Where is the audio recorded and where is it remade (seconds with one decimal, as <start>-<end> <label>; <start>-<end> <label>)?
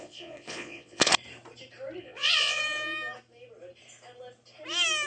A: 0.0-1.1 remade; 1.1-2.0 recorded; 2.0-2.6 remade; 2.6-5.1 recorded